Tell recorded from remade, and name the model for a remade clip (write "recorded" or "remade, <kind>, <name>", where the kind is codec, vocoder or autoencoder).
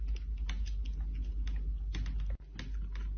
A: recorded